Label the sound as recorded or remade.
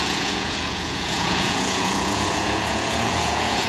remade